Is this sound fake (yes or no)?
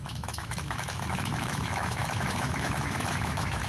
yes